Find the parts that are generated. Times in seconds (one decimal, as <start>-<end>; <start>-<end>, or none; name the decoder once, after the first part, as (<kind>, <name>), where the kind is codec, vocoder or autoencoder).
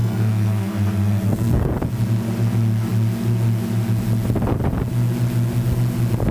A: 0.0-1.7 (codec, SNAC)